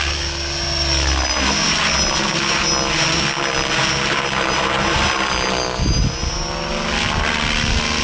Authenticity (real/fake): real